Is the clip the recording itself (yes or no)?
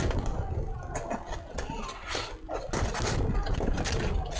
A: yes